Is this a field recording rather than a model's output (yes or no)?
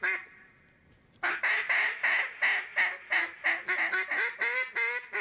yes